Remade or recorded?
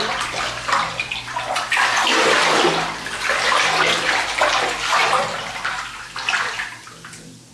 recorded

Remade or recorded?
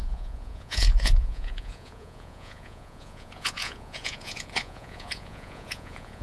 remade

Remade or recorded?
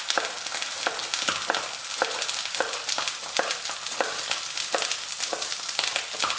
recorded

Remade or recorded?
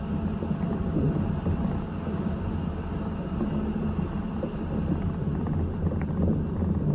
recorded